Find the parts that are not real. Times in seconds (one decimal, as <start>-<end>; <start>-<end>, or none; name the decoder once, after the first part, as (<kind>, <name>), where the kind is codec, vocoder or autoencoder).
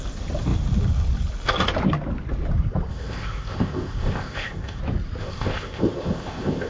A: 2.9-4.8 (codec, ZipCodec); 5.2-6.7